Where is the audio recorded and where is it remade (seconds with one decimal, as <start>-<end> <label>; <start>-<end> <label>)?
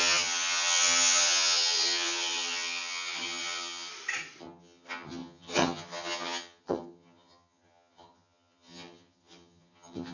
0.0-3.9 remade; 3.9-4.4 recorded; 4.4-10.1 remade